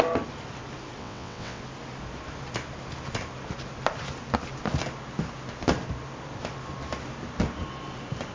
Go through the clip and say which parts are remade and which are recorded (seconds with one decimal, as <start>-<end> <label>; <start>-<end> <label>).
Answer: 0.0-1.0 recorded; 1.0-1.6 remade; 1.6-8.3 recorded